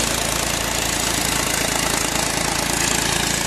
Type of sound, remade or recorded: recorded